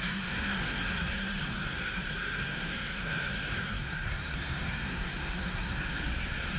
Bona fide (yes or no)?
no